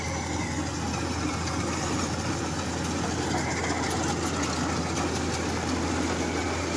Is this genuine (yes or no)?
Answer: yes